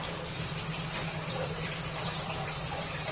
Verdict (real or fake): fake